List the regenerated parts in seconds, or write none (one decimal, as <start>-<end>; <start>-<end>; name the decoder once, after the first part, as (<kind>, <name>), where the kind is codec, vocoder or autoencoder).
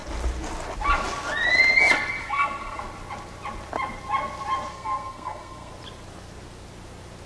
2.2-2.8 (codec, SNAC); 4.7-5.7